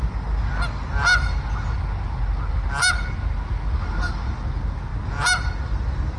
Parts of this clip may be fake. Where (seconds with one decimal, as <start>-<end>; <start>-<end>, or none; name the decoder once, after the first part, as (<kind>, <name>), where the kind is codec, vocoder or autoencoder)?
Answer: none